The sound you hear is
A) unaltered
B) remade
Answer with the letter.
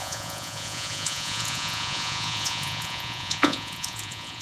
B